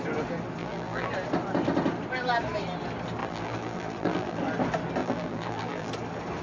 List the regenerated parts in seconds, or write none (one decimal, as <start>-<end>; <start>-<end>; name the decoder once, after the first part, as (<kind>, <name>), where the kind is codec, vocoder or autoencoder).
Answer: 0.6-1.1 (vocoder, BigVGAN v2); 3.2-4.4; 5.0-5.9